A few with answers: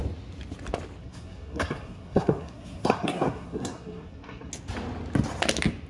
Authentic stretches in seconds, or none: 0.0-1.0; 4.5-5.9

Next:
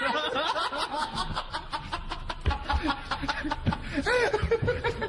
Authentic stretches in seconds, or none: 0.0-0.9; 1.5-5.1

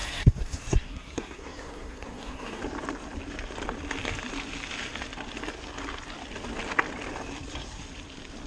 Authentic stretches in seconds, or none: 2.6-8.5

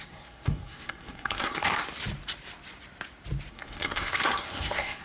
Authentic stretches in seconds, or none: 1.8-3.5

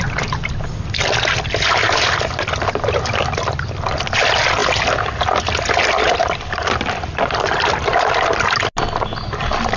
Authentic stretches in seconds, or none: 0.0-9.8

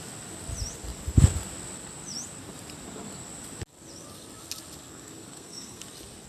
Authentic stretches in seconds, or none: 0.0-4.9; 5.8-6.3

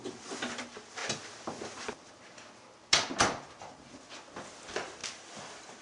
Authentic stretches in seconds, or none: 0.0-5.8